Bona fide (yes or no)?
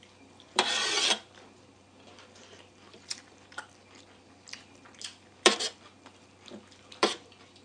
no